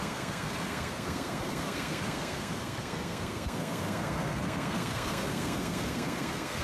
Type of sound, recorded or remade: remade